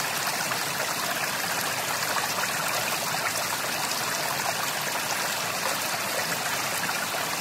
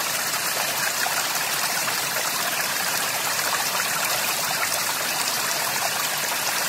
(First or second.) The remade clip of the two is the second